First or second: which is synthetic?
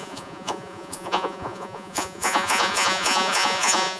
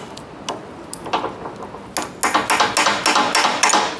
first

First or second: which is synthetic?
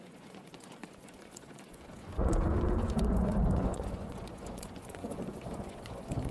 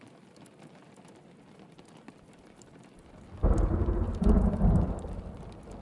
first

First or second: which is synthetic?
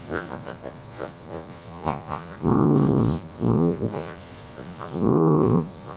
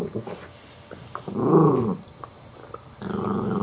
first